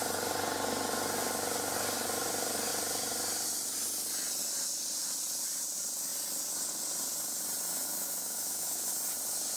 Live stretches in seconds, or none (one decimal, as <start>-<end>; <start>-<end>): 0.0-7.7; 8.9-9.6